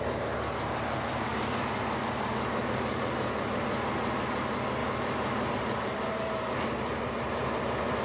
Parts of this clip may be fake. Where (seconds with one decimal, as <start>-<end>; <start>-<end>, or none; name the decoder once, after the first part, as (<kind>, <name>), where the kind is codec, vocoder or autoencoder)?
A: none